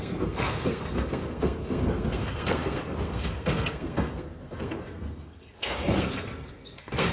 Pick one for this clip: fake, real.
fake